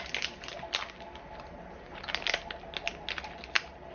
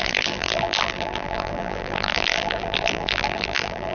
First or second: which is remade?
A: second